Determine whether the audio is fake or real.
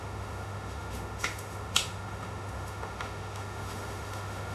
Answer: fake